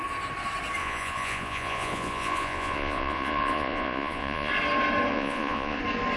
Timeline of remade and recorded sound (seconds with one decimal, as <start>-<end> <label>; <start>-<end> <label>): 0.0-0.8 recorded; 0.8-4.5 remade; 4.5-5.1 recorded; 5.1-5.8 remade; 5.8-6.2 recorded